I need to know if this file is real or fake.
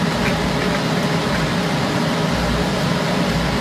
real